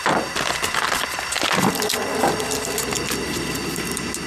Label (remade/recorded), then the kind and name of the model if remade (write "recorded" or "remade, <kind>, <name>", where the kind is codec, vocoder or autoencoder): recorded